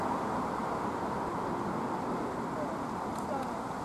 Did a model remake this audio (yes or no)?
no